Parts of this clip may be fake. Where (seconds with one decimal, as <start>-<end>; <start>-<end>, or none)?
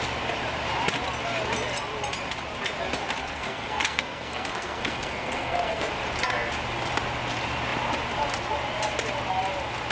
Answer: 3.2-5.9